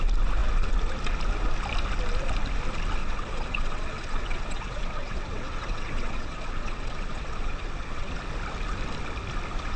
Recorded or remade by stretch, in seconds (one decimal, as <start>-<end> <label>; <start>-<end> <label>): 0.0-3.0 recorded; 3.0-8.1 remade; 8.1-9.8 recorded